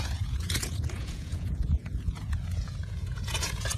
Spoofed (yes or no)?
yes